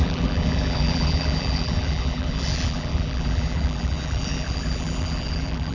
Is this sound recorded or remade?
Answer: remade